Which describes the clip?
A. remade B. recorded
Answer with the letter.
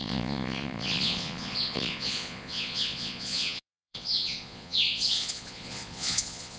A